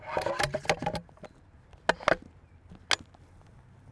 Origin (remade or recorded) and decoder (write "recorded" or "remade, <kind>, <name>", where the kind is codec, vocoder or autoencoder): recorded